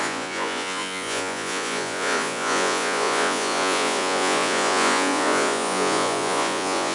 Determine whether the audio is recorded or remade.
remade